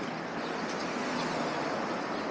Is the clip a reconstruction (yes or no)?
no